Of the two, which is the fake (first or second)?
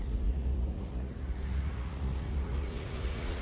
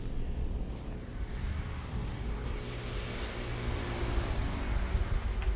first